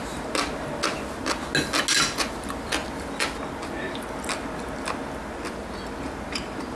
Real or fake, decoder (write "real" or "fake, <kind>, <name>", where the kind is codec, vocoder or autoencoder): real